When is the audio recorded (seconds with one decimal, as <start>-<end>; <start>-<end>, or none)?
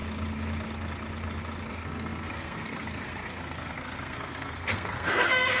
0.0-1.7